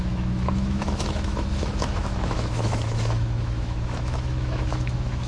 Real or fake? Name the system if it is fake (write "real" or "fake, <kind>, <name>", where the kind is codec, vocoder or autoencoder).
fake, autoencoder, DAC-VAE